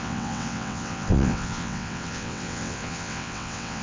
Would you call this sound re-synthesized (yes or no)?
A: yes